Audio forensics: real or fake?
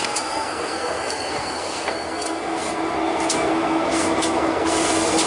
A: fake